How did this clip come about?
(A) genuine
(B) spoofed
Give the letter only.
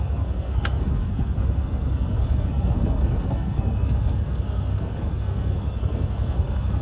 B